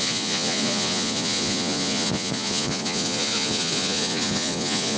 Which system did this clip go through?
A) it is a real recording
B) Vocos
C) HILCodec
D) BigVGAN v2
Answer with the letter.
B